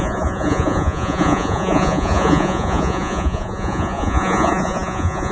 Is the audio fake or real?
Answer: fake